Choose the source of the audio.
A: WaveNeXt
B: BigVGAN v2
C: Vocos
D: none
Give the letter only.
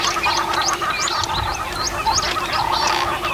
D